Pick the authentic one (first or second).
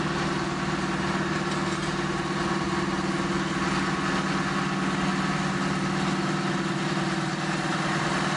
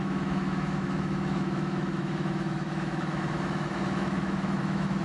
first